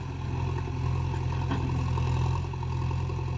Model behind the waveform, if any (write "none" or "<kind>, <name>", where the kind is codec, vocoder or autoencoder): none